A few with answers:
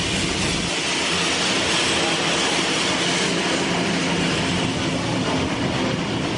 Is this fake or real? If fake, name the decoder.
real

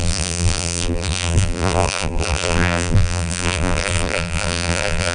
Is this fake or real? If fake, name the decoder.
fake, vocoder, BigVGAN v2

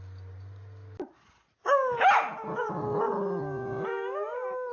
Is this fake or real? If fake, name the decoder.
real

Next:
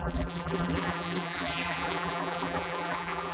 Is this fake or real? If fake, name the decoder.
fake, vocoder, BigVGAN v2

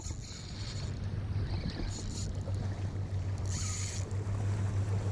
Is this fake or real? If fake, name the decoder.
real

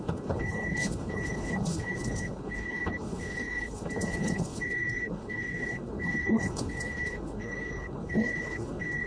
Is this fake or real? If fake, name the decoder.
fake, codec, HILCodec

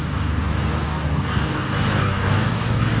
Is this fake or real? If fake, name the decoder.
fake, codec, DAC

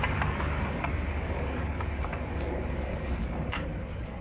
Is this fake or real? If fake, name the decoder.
fake, codec, DAC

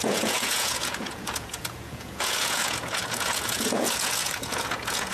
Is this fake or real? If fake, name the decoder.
fake, vocoder, Vocos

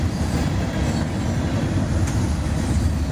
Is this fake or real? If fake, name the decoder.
real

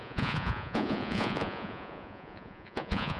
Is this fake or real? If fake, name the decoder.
fake, vocoder, Vocos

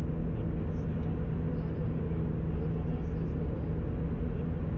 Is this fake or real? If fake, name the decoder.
real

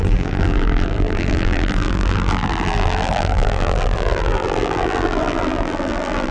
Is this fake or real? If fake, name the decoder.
fake, vocoder, BigVGAN v2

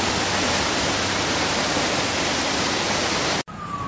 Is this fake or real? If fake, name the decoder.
real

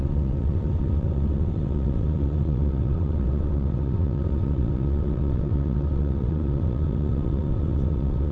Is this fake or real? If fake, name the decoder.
fake, vocoder, WaveNeXt